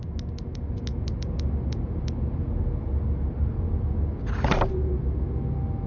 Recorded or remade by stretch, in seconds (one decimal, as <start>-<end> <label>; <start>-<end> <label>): 0.0-5.9 recorded